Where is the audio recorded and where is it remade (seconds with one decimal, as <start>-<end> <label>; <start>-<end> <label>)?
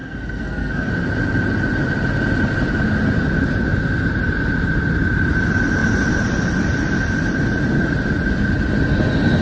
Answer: 0.0-0.9 remade; 0.9-9.4 recorded